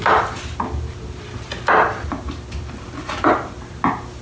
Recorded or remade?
recorded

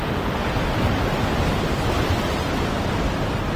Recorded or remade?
recorded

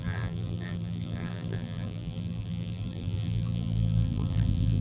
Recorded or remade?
remade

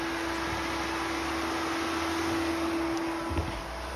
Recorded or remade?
recorded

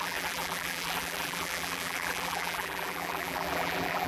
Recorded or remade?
remade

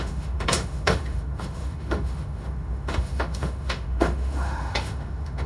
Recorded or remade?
remade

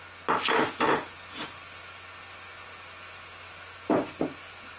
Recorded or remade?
recorded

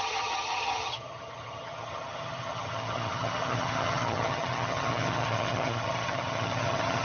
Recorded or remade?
remade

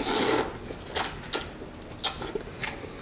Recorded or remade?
recorded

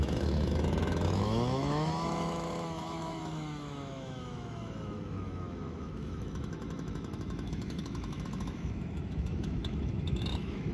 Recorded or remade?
remade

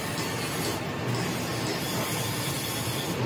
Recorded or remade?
recorded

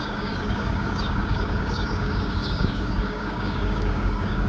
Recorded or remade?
remade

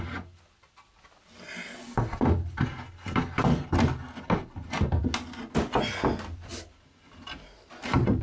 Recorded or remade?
recorded